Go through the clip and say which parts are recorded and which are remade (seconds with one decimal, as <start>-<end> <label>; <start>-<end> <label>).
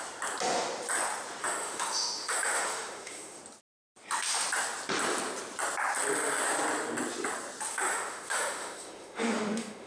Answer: 0.0-1.4 recorded; 1.4-3.4 remade; 3.4-7.7 recorded; 7.7-9.9 remade